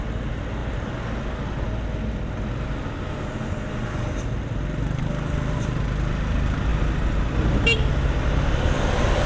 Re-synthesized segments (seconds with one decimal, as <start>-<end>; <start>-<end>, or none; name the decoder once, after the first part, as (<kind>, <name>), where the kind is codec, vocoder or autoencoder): none